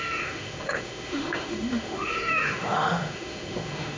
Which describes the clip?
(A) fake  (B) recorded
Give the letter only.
A